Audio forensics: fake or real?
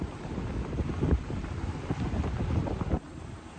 real